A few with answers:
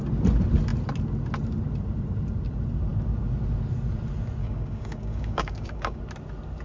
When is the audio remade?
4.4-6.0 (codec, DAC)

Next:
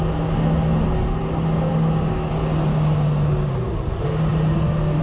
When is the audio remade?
1.7-2.3 (codec, DAC); 2.7-3.5

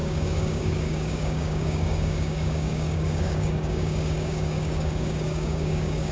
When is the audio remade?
0.0-6.1 (codec, DAC)

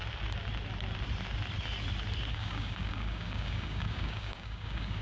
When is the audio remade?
2.3-5.0 (codec, DAC)

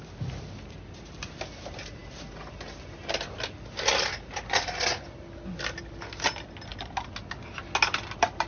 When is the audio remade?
none

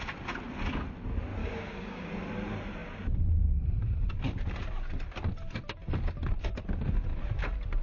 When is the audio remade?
1.4-2.1 (codec, DAC)

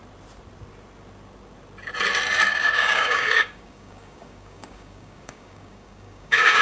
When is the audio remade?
2.5-6.6 (codec, DAC)

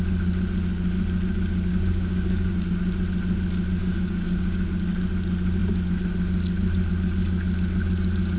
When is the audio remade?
1.7-2.5 (codec, DAC); 3.8-4.7